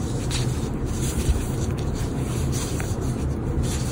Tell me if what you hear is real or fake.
fake